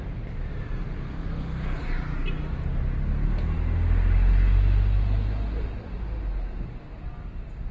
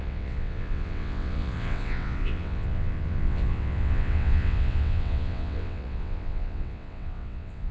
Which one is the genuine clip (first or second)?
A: first